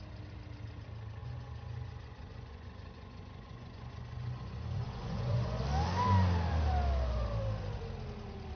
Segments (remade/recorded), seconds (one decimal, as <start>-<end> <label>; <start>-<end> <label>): 0.0-1.2 recorded; 1.2-5.6 remade; 5.6-8.6 recorded